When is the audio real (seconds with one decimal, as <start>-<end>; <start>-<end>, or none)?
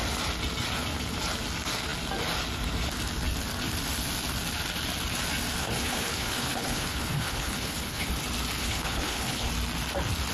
0.0-5.6; 8.1-8.6; 9.5-10.3